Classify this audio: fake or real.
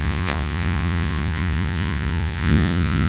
fake